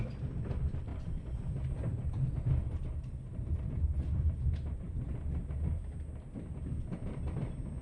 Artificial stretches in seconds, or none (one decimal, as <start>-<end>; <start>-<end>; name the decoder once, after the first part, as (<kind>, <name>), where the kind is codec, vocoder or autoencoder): 1.9-5.1 (vocoder, BigVGAN v2)